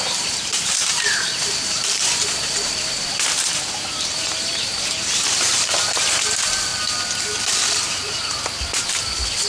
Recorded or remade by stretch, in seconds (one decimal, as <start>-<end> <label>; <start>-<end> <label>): 0.0-6.7 remade; 6.7-9.0 recorded; 9.0-9.5 remade